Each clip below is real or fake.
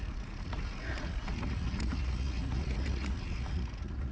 fake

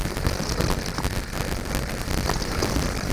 real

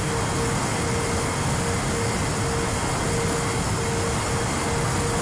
real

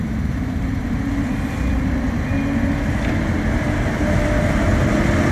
real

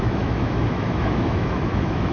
fake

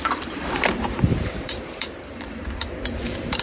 fake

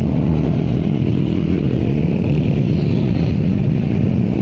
fake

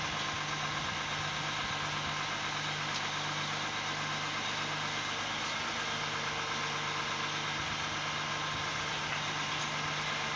real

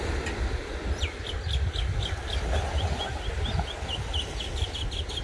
real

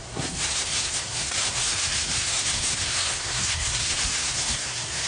fake